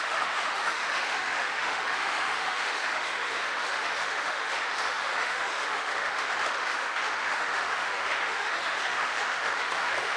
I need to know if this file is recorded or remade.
remade